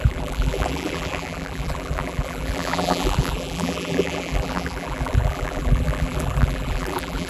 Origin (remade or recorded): remade